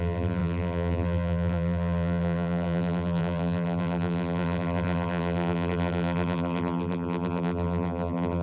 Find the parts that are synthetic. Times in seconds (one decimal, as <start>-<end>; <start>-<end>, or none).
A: 0.0-8.4